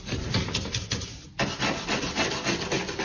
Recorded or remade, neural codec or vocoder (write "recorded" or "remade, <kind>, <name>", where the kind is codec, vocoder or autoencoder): recorded